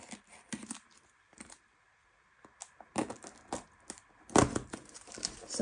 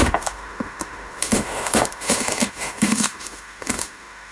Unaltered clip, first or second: first